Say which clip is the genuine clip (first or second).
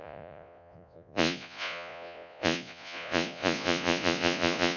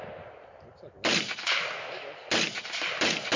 second